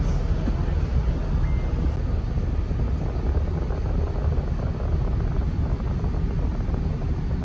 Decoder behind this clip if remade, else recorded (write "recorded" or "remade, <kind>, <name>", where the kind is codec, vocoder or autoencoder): recorded